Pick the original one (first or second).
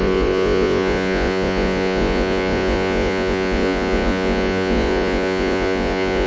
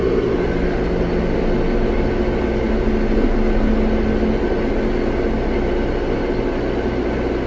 second